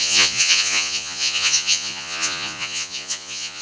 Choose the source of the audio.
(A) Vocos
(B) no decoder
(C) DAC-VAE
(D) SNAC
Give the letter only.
A